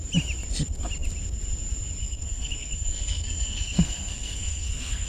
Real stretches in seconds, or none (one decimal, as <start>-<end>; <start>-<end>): 0.0-2.0